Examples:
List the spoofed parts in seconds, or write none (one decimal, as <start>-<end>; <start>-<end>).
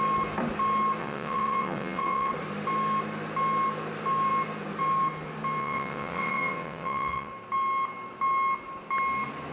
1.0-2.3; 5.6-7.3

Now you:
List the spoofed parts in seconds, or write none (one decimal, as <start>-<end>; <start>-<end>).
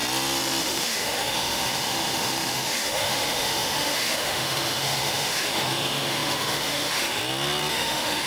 0.6-7.2; 7.7-8.3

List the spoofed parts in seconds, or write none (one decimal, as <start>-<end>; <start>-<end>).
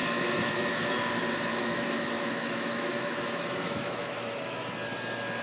0.0-0.9; 1.5-4.7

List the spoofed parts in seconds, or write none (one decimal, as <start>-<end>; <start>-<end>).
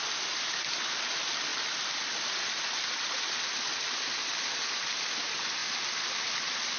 none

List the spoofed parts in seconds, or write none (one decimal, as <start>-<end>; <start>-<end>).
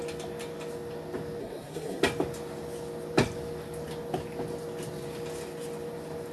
1.4-2.0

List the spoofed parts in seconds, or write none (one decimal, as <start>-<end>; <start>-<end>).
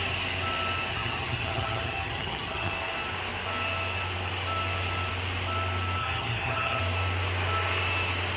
0.9-2.7; 6.0-6.8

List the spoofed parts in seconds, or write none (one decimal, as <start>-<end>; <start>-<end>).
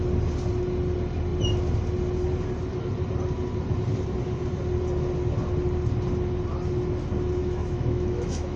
7.4-8.6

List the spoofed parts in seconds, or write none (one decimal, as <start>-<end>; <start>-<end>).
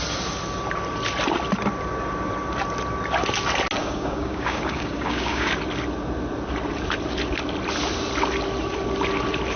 3.8-5.5